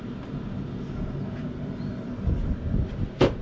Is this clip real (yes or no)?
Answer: yes